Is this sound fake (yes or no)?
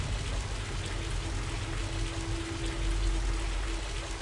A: no